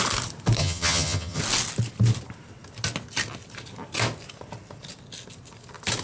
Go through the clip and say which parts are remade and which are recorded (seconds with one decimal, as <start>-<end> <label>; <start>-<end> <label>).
0.0-0.6 recorded; 0.6-1.4 remade; 1.4-6.0 recorded